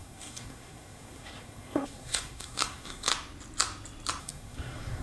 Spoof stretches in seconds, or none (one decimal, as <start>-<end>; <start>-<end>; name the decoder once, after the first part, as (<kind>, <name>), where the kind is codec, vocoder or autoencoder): 0.0-3.1 (codec, SNAC); 4.2-5.0